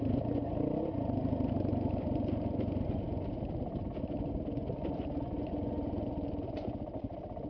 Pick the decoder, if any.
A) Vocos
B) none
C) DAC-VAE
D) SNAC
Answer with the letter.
B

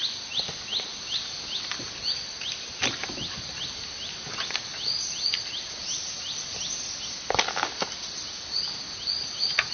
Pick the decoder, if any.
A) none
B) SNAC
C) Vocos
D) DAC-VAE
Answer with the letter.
A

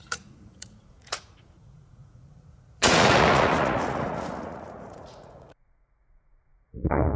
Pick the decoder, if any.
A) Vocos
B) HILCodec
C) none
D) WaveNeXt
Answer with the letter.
A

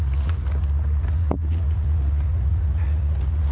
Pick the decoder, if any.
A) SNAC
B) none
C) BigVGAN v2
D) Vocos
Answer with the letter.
D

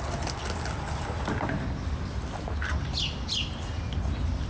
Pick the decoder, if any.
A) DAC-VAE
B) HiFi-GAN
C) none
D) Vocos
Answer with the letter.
C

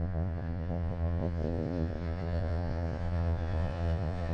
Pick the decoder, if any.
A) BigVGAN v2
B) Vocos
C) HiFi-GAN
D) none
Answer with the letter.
B